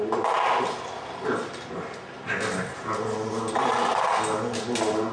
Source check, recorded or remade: recorded